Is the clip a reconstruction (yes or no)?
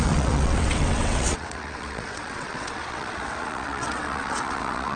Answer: yes